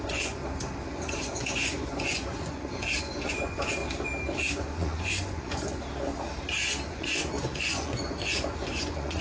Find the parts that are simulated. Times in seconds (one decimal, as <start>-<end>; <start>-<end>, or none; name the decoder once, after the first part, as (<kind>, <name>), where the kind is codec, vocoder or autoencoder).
0.0-0.4 (vocoder, Vocos); 0.9-3.8; 4.5-5.7; 6.9-9.2